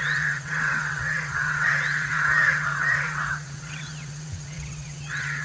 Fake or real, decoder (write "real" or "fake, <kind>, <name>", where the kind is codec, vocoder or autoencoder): fake, vocoder, WaveNeXt